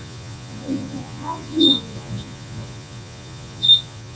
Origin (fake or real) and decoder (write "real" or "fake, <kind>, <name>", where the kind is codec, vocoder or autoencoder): fake, vocoder, Vocos